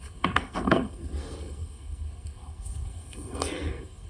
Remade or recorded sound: remade